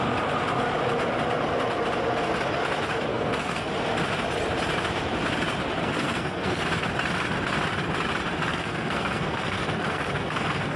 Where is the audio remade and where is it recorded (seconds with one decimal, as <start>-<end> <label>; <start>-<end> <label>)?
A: 0.0-3.1 recorded; 3.1-3.7 remade; 3.7-5.8 recorded; 5.8-6.6 remade; 6.6-8.5 recorded; 8.5-10.8 remade